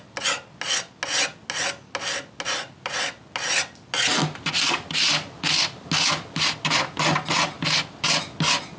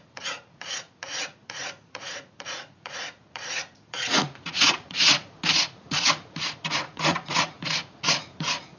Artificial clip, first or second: second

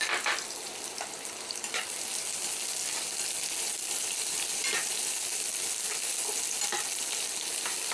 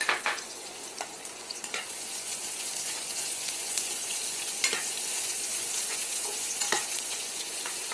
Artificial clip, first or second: second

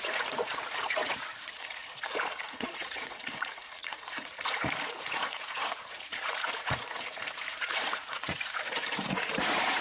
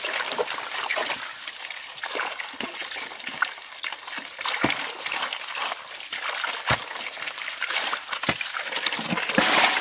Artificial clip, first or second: first